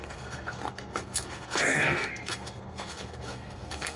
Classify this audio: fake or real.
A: fake